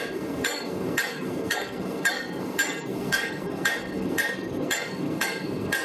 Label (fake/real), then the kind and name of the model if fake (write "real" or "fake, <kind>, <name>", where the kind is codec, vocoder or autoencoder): fake, codec, SNAC